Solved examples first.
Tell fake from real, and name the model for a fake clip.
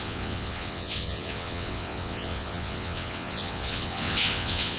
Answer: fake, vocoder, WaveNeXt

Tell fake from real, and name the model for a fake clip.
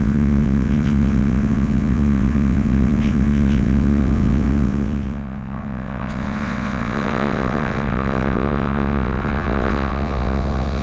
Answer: fake, vocoder, WaveNeXt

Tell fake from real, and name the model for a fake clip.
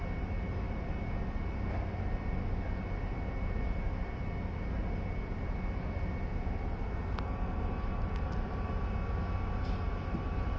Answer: real